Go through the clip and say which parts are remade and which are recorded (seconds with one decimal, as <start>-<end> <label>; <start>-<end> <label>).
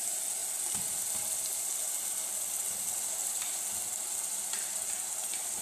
0.0-5.6 recorded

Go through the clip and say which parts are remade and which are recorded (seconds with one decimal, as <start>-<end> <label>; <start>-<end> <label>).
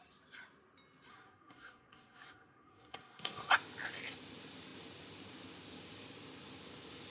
0.0-1.1 recorded; 1.1-3.5 remade; 3.5-7.1 recorded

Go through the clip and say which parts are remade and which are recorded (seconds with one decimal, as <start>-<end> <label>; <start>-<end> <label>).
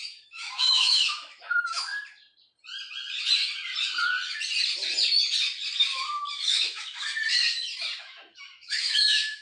0.0-1.9 remade; 1.9-6.3 recorded; 6.3-7.1 remade; 7.1-8.0 recorded; 8.0-9.4 remade